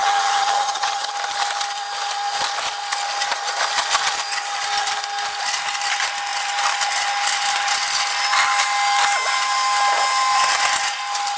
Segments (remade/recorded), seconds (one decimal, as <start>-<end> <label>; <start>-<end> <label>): 0.0-1.1 remade; 1.1-11.4 recorded